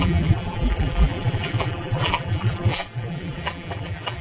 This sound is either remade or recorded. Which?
remade